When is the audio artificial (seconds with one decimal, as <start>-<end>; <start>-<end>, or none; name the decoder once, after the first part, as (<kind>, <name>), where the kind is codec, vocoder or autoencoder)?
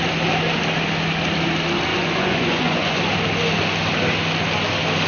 1.9-3.0 (vocoder, Vocos)